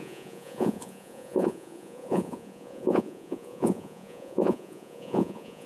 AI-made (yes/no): yes